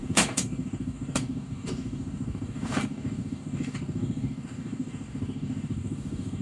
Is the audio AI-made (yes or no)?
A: yes